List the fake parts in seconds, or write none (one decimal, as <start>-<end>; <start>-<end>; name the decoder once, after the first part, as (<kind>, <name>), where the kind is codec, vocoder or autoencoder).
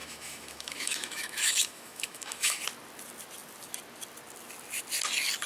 0.0-2.6 (autoencoder, DAC-VAE)